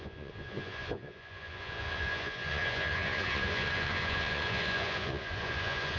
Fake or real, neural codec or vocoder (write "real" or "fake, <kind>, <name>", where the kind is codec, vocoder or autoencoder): fake, vocoder, Vocos